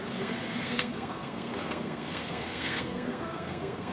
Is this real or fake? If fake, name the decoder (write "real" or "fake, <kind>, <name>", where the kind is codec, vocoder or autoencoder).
fake, codec, SNAC